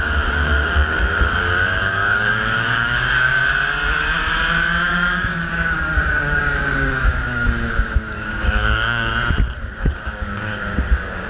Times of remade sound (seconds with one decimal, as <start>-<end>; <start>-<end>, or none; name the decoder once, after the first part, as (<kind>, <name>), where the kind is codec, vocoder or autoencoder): 0.0-3.4 (codec, DAC); 4.9-9.1; 9.6-11.3